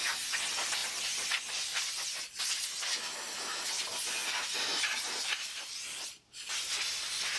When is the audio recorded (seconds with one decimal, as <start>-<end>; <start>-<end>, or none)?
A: 0.0-7.4